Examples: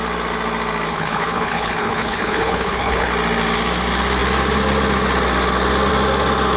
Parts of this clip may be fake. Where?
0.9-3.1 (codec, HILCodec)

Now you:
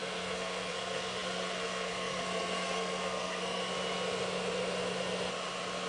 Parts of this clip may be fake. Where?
0.0-3.6 (codec, SNAC)